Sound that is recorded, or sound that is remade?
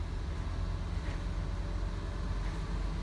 recorded